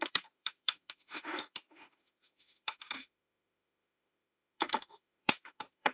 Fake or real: fake